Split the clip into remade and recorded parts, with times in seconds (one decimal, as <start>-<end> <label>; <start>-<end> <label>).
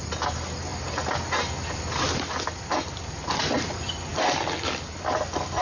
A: 0.0-5.6 recorded